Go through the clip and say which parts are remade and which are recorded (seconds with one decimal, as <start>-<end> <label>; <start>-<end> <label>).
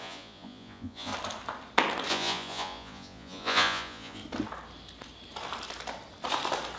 0.0-1.1 remade; 1.1-2.1 recorded; 2.1-4.2 remade; 4.2-6.8 recorded